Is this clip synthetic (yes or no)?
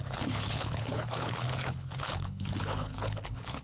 yes